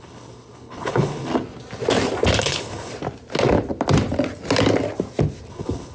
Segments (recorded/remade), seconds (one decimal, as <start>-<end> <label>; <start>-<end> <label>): 0.0-1.3 remade; 1.3-2.4 recorded; 2.4-2.9 remade; 2.9-5.5 recorded; 5.5-5.9 remade